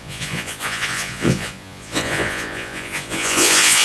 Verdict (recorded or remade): remade